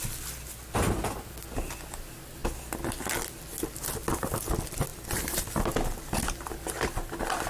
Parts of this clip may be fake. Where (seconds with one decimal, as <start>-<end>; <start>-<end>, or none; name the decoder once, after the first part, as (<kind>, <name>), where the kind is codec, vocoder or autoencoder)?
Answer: 4.9-5.5 (vocoder, BigVGAN v2)

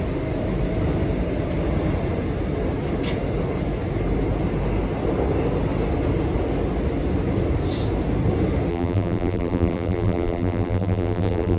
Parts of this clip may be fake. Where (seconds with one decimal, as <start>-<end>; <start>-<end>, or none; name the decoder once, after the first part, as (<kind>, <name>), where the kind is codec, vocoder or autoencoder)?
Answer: 8.7-11.6 (vocoder, BigVGAN v2)

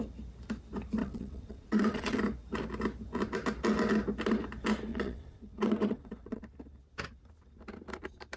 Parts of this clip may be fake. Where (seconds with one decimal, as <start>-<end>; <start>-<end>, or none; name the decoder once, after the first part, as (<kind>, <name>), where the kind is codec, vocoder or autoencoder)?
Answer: 1.0-2.2 (vocoder, WaveNeXt); 4.9-6.4

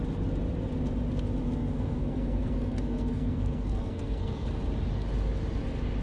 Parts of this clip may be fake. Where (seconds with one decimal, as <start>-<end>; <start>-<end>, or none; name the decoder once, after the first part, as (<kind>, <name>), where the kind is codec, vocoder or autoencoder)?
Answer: 1.4-4.5 (codec, SNAC)

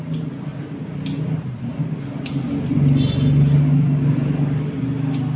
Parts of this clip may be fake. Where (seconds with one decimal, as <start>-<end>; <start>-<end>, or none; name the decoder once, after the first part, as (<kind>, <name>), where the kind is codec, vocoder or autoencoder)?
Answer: none